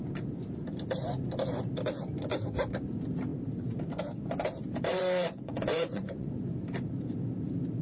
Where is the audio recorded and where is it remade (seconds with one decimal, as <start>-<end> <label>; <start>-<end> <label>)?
0.0-4.9 recorded; 4.9-6.4 remade; 6.4-7.8 recorded